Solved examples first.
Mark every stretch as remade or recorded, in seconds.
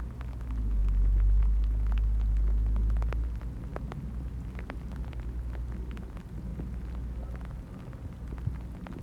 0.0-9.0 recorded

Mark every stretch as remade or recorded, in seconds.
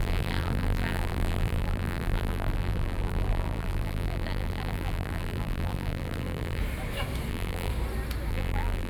0.0-6.6 remade; 6.6-7.3 recorded; 7.3-7.7 remade; 7.7-8.3 recorded; 8.3-8.9 remade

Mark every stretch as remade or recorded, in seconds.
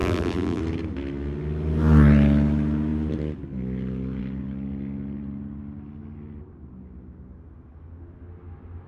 0.0-0.6 remade; 0.6-8.9 recorded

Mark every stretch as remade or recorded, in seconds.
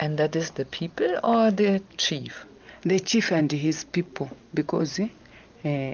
0.0-5.9 recorded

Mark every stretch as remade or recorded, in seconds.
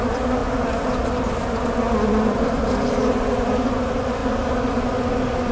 0.0-0.4 remade; 0.4-3.7 recorded; 3.7-4.2 remade; 4.2-5.5 recorded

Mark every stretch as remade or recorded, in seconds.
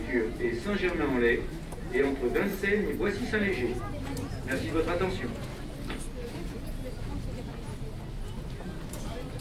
0.0-9.4 recorded